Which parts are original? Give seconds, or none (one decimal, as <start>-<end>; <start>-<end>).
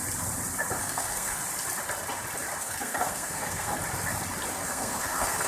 0.0-0.8; 1.4-2.6; 3.7-4.5